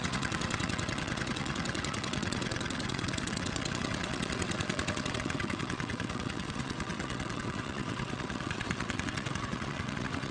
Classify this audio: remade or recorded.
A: remade